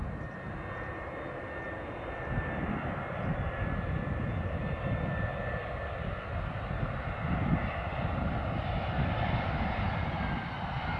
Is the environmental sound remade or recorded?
recorded